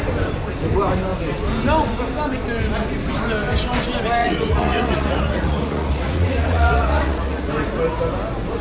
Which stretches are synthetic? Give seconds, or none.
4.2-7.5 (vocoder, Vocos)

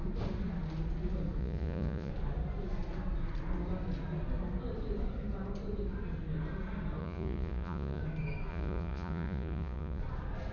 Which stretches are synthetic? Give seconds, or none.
1.4-2.1 (vocoder, Vocos); 7.0-8.0; 8.5-10.0

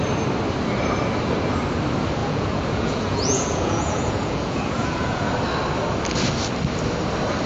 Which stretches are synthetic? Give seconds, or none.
2.2-5.2 (vocoder, Vocos)

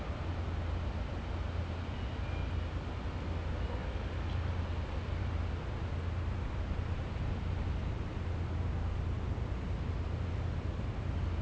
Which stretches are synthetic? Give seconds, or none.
none